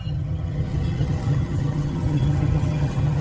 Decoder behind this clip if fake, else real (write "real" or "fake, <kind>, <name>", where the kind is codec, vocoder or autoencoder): fake, vocoder, HiFi-GAN